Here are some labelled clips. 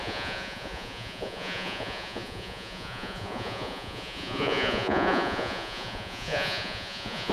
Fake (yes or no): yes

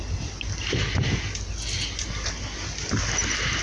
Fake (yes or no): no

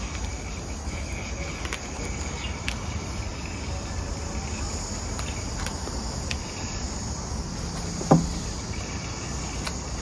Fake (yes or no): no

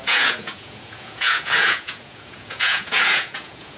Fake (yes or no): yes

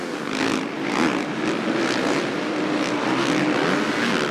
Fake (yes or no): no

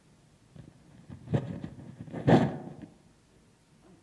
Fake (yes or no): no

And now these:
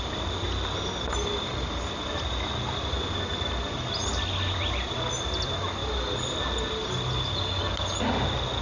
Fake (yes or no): no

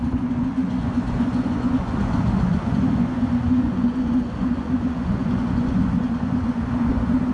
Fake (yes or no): yes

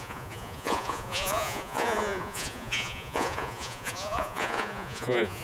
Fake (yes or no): yes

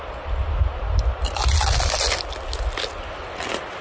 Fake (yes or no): no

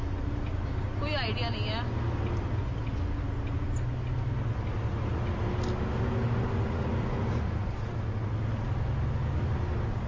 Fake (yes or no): no